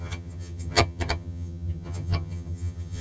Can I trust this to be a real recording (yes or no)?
no